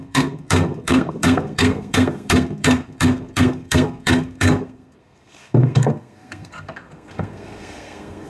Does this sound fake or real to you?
fake